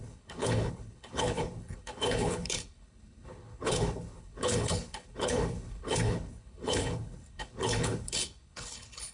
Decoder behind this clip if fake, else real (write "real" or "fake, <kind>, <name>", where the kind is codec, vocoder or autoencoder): fake, codec, HILCodec